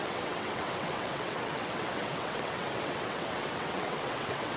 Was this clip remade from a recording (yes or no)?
yes